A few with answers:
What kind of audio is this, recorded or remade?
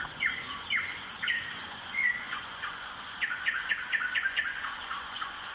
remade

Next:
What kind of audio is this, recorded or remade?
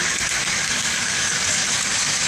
remade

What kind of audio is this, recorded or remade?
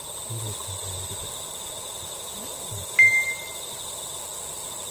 recorded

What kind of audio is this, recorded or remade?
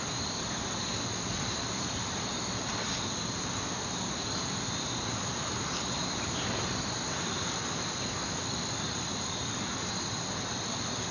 recorded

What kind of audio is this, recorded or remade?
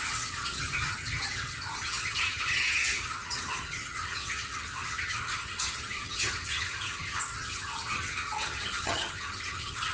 remade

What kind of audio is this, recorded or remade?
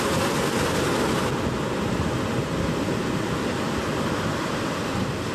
recorded